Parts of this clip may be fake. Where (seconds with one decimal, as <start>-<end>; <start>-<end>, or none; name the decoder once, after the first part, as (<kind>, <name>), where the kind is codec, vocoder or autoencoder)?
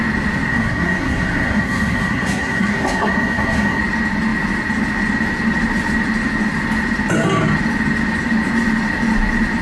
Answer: 0.5-3.8 (codec, SNAC)